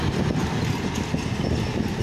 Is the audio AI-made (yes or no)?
no